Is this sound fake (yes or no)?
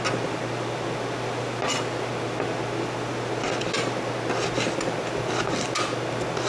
no